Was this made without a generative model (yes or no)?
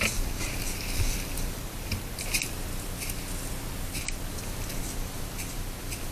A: yes